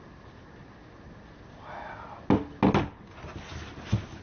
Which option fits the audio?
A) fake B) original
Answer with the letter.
B